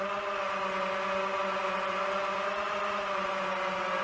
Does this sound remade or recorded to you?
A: recorded